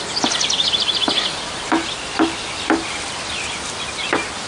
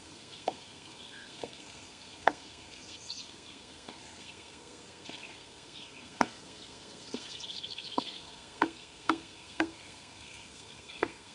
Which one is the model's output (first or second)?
second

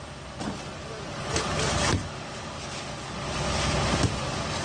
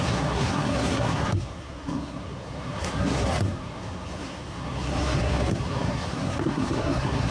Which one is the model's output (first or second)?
second